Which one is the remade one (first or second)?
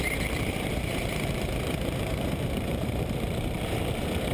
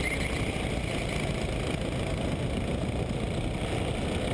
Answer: first